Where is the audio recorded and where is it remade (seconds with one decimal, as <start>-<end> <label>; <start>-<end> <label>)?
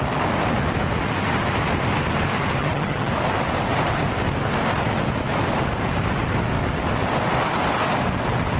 0.0-2.6 recorded; 2.6-3.1 remade; 3.1-8.6 recorded